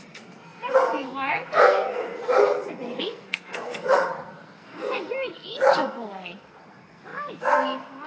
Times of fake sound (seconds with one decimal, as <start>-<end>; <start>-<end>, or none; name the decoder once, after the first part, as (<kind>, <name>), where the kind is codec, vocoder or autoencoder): 0.0-8.1 (codec, SNAC)